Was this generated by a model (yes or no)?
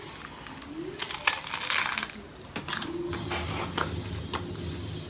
no